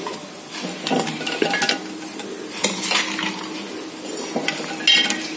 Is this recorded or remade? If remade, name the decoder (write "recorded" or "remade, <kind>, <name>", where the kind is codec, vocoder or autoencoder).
recorded